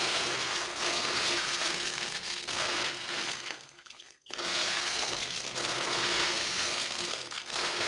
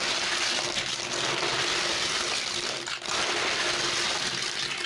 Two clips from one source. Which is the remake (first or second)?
first